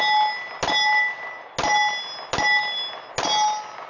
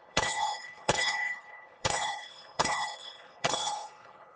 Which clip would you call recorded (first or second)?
first